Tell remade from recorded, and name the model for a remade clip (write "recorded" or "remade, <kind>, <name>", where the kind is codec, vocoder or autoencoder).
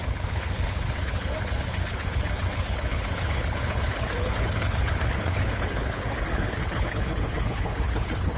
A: remade, codec, HILCodec